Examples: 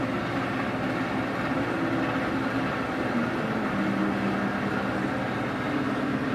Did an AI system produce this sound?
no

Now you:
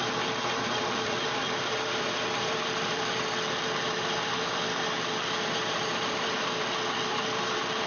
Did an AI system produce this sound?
yes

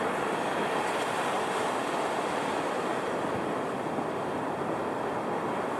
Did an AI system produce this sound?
no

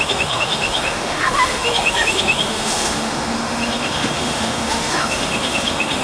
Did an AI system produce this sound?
yes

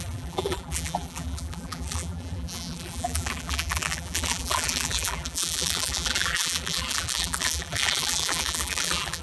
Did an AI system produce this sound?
yes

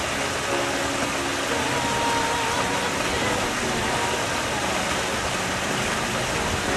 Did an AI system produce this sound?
no